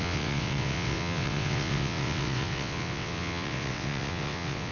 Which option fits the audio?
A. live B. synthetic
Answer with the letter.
B